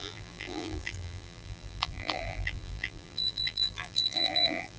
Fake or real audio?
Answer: fake